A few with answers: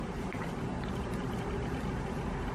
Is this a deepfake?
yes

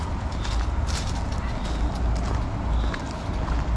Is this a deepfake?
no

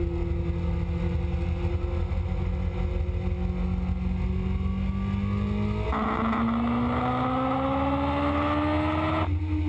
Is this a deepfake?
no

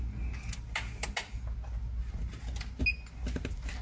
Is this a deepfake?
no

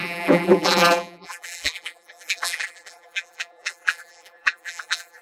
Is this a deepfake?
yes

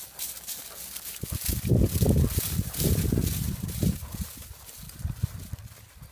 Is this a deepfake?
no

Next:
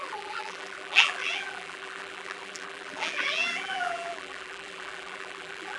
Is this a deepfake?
yes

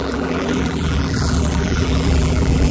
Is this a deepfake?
yes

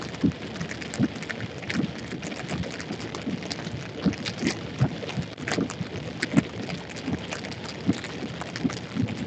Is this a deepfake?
no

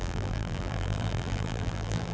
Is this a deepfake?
yes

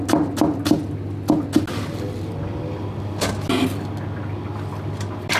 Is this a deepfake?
no